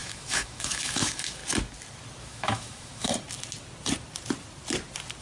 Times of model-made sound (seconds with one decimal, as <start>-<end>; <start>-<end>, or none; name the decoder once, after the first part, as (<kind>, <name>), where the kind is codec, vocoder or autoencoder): 0.0-1.4 (autoencoder, DAC-VAE); 2.2-3.1